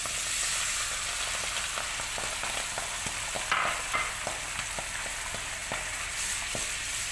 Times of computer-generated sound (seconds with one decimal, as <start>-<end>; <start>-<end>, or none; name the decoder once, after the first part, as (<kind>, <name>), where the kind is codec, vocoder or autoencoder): none